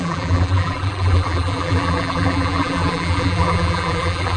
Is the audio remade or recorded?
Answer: remade